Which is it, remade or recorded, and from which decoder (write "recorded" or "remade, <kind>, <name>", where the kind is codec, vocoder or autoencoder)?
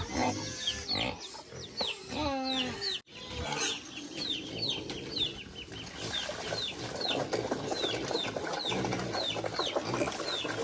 recorded